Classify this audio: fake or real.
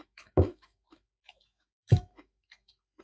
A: fake